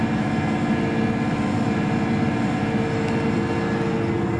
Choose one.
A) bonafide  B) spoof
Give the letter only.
A